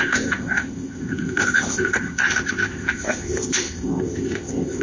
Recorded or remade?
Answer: remade